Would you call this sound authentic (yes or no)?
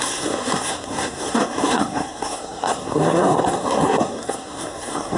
no